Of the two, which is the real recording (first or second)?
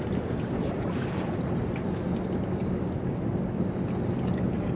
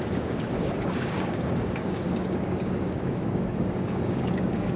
first